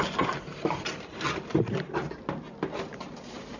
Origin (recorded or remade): recorded